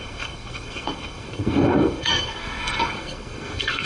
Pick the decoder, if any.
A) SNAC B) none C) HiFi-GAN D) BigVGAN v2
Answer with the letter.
A